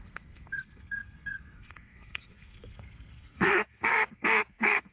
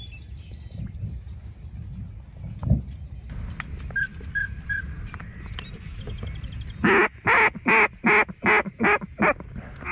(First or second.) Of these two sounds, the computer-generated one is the first